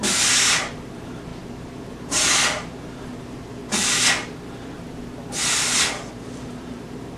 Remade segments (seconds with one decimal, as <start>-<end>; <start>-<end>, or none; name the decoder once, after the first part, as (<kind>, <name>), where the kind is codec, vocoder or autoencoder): 0.0-3.6 (vocoder, BigVGAN v2); 6.1-7.2